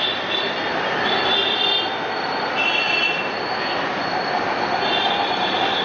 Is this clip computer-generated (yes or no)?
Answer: no